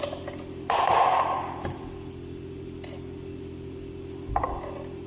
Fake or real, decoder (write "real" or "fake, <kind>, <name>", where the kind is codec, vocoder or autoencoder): real